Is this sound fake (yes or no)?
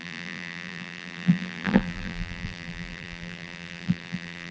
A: yes